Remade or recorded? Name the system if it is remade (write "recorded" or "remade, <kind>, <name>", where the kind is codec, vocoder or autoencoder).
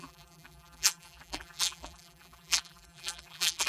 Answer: remade, vocoder, BigVGAN v2